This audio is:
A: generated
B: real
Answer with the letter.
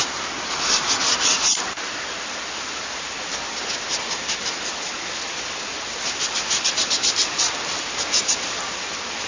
B